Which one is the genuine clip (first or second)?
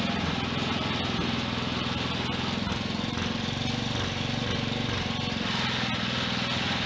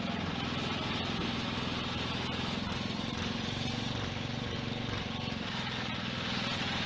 first